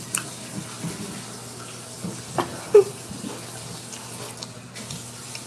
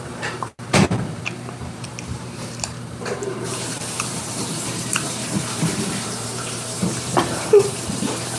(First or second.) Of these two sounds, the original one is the first